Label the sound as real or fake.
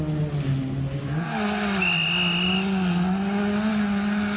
real